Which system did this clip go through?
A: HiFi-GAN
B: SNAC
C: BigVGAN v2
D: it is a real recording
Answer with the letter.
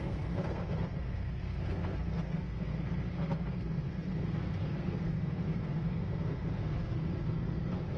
B